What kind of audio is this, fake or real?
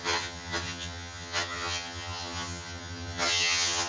fake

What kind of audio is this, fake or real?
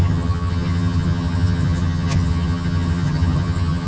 fake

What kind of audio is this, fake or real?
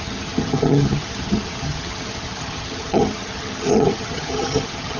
fake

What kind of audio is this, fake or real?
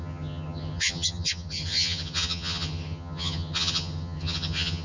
fake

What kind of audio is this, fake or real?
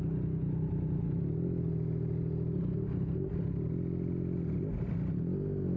real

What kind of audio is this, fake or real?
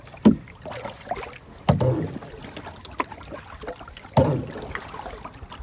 real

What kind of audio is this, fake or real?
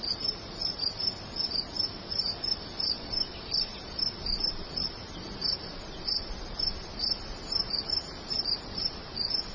real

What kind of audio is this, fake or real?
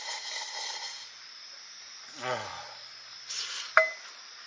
real